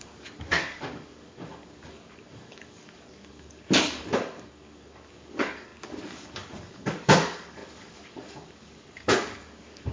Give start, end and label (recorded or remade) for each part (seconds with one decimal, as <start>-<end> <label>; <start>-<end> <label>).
0.0-9.9 remade